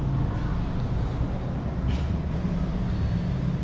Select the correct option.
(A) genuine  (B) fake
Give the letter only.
A